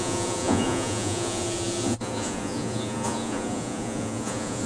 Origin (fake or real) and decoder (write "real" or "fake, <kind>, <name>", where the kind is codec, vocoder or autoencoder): fake, vocoder, Vocos